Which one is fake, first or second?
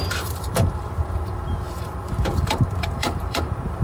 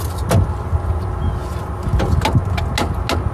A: first